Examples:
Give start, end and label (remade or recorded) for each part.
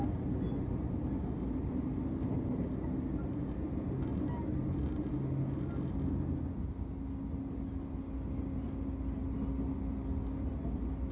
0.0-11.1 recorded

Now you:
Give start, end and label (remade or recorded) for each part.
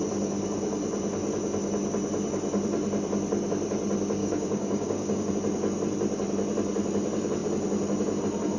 0.0-4.2 recorded; 4.2-5.3 remade; 5.3-8.6 recorded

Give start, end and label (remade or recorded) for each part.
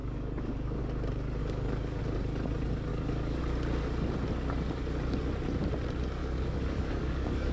0.0-0.8 remade; 0.8-1.4 recorded; 1.4-2.0 remade; 2.0-2.9 recorded; 2.9-3.4 remade; 3.4-6.2 recorded; 6.2-7.5 remade